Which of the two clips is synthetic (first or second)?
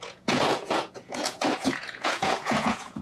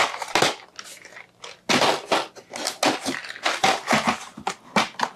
first